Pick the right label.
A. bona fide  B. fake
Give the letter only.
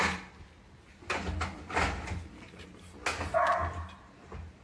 A